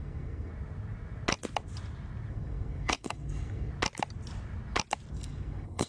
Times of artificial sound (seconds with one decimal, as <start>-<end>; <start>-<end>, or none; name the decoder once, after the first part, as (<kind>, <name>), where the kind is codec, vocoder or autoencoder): 0.0-0.5 (codec, SNAC); 2.3-3.7; 5.1-5.9